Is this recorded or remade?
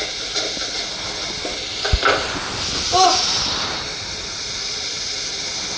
recorded